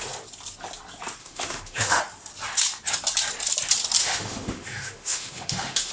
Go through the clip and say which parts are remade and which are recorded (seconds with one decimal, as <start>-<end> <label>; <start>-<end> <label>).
0.0-1.2 recorded; 1.2-2.0 remade; 2.0-4.0 recorded; 4.0-5.9 remade